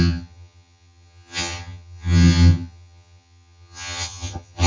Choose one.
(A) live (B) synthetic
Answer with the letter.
B